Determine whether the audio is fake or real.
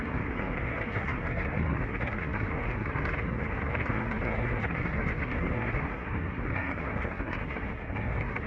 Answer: fake